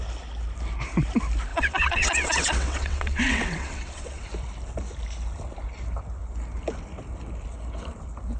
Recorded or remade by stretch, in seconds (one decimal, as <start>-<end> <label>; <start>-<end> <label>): 0.0-1.5 recorded; 1.5-4.2 remade; 4.2-8.4 recorded